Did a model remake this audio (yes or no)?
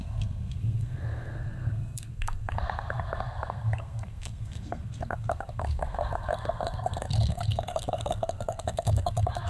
yes